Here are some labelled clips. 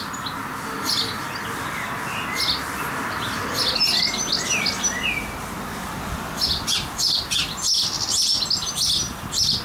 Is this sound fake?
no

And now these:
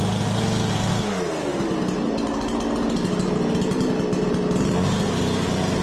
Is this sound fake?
no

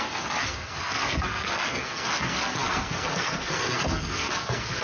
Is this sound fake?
yes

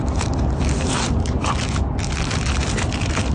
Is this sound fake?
no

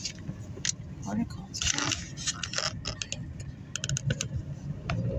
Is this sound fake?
no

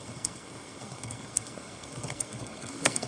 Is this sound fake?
yes